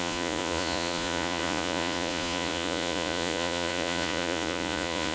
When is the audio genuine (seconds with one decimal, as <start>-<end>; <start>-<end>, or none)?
none